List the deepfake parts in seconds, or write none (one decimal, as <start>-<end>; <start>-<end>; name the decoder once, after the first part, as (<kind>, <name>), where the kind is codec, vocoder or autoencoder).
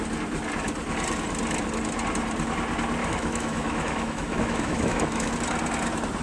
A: 3.0-5.3 (autoencoder, DAC-VAE)